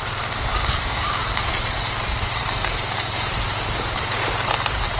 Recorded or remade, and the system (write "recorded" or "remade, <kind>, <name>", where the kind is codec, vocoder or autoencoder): remade, vocoder, BigVGAN v2